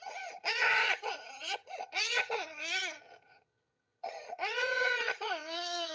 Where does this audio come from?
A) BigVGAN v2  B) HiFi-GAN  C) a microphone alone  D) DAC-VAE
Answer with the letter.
B